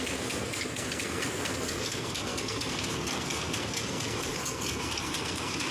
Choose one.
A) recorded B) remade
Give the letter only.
B